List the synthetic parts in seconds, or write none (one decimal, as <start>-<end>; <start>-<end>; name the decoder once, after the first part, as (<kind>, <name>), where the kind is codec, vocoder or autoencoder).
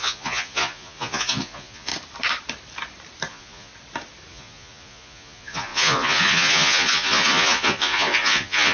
0.0-1.9 (vocoder, Vocos); 3.3-3.7; 4.3-8.7